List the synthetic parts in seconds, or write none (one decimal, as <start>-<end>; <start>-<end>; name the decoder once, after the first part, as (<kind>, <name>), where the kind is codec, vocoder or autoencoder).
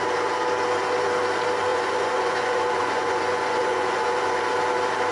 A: 1.7-4.4 (vocoder, Vocos)